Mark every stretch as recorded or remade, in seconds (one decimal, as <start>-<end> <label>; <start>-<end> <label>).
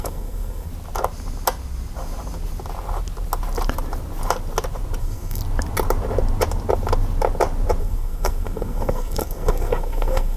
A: 0.0-0.7 remade; 0.7-5.0 recorded; 5.0-5.4 remade; 5.4-7.8 recorded; 7.8-10.4 remade